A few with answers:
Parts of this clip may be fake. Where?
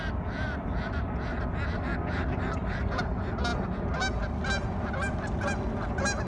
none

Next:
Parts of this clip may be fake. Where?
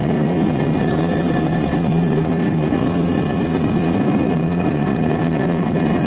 0.0-6.1 (vocoder, Vocos)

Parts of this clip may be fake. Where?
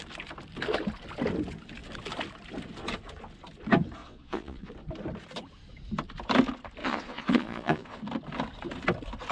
4.0-4.7 (vocoder, Vocos); 6.8-8.0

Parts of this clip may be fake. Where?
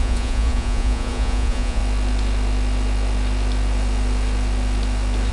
0.0-1.8 (vocoder, Vocos)